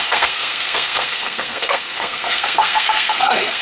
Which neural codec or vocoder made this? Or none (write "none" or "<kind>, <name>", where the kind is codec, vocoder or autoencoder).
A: codec, SNAC